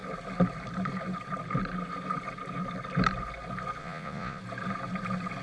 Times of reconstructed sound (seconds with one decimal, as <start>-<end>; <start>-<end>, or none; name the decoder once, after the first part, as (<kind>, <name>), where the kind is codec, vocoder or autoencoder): 3.8-4.4 (vocoder, Vocos)